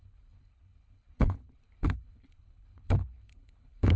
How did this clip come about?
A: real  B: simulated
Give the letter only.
B